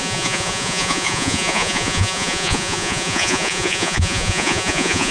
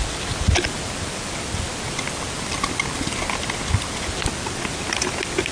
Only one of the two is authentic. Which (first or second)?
second